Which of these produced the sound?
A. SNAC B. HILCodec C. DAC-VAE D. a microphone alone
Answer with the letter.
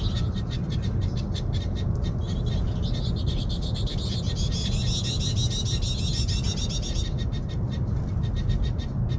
D